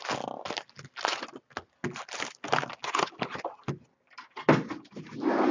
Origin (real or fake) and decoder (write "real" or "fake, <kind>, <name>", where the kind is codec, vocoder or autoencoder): real